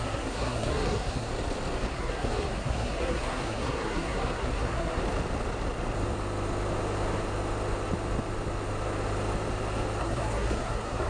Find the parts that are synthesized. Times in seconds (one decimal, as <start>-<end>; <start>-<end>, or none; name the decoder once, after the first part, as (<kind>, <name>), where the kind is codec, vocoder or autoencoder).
0.0-1.3 (codec, SNAC); 1.9-5.0; 10.0-11.1